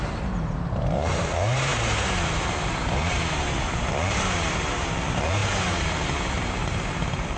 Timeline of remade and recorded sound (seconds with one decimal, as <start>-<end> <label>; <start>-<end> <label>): 0.0-7.4 remade